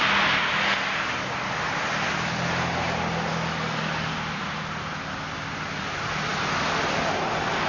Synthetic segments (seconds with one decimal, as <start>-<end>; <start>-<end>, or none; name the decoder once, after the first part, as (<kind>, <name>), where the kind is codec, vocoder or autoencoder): 3.3-4.1 (codec, DAC)